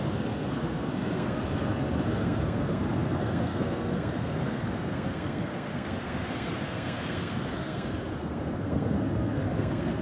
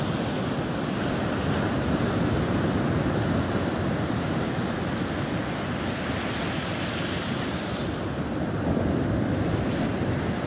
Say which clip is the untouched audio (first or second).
second